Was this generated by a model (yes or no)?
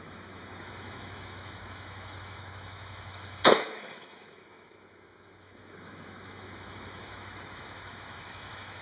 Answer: yes